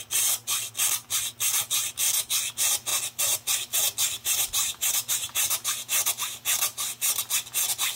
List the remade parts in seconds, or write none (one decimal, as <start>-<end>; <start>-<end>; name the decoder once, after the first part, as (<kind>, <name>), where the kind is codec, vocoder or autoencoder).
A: 4.2-6.8 (vocoder, BigVGAN v2)